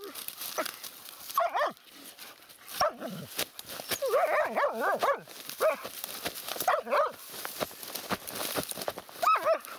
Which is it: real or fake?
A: real